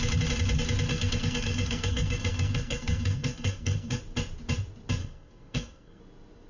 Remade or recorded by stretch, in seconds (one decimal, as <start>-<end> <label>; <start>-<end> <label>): 0.0-0.9 recorded; 0.9-4.0 remade; 4.0-5.0 recorded; 5.0-6.0 remade; 6.0-6.5 recorded